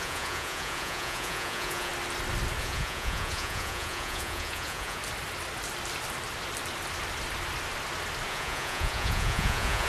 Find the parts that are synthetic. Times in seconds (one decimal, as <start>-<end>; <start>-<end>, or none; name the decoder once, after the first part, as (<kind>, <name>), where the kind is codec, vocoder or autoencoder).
0.0-1.9 (vocoder, Vocos); 2.6-5.0; 8.3-9.9